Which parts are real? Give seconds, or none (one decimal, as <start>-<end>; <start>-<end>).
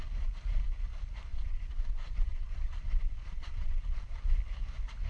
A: 0.0-1.3; 4.2-5.1